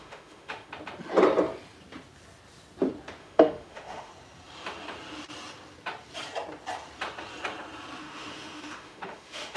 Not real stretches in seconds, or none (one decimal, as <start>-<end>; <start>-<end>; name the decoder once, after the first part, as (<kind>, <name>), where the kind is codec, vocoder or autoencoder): 0.0-0.7 (autoencoder, DAC-VAE); 3.2-4.1; 8.0-9.6